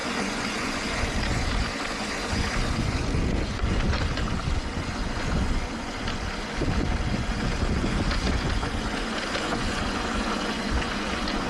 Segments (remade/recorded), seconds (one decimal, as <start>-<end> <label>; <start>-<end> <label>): 0.0-11.5 remade

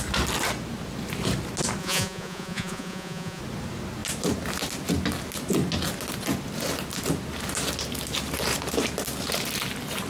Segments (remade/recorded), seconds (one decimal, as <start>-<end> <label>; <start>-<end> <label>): 0.0-1.8 recorded; 1.8-3.4 remade; 3.4-10.1 recorded

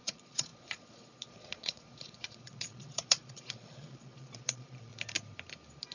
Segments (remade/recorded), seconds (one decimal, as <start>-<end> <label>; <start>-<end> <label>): 0.0-4.9 remade; 4.9-5.9 recorded

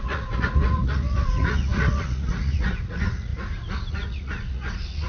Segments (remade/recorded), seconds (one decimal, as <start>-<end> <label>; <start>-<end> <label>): 0.0-3.3 remade; 3.3-3.9 recorded; 3.9-5.1 remade

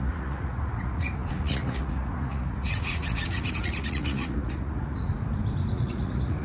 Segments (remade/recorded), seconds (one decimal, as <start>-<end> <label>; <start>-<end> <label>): 0.0-5.1 remade; 5.1-5.7 recorded; 5.7-6.4 remade

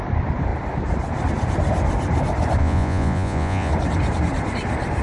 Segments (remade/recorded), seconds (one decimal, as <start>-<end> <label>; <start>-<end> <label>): 0.0-2.6 recorded; 2.6-3.7 remade; 3.7-5.0 recorded

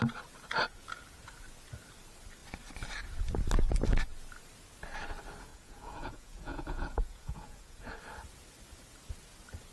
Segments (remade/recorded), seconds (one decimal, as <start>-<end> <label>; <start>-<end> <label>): 0.0-5.5 recorded; 5.5-8.0 remade; 8.0-9.7 recorded

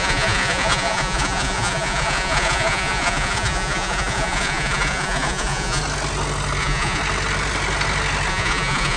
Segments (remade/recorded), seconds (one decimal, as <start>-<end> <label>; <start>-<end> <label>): 0.0-5.8 remade; 5.8-6.6 recorded; 6.6-7.0 remade; 7.0-8.3 recorded; 8.3-9.0 remade